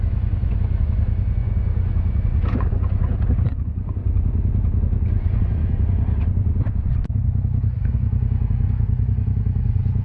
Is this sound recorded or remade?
remade